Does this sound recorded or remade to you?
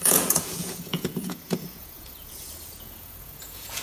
remade